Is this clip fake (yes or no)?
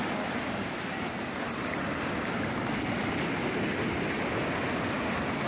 no